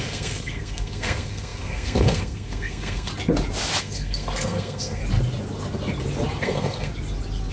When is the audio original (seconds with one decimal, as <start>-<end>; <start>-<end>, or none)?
3.1-3.8; 5.0-6.4; 6.9-7.5